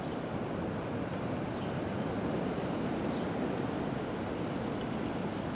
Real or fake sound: real